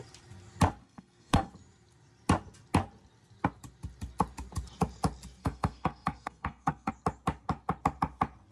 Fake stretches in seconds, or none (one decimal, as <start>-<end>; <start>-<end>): 0.8-1.5; 5.4-6.9